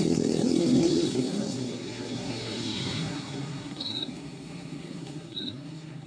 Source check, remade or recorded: remade